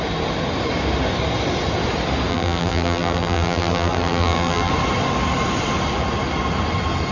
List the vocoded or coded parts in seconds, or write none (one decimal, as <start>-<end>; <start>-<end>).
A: 2.3-4.7